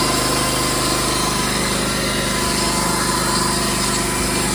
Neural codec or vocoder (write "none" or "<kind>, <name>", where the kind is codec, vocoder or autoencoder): none